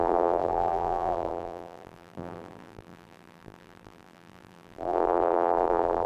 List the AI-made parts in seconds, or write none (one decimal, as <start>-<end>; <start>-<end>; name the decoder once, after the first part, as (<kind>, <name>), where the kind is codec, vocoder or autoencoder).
0.0-6.1 (vocoder, BigVGAN v2)